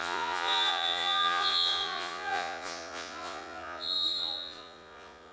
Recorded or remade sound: remade